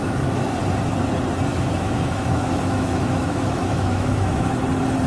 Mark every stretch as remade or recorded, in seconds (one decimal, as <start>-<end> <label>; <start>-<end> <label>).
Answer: 0.0-0.5 remade; 0.5-1.5 recorded; 1.5-4.6 remade; 4.6-5.1 recorded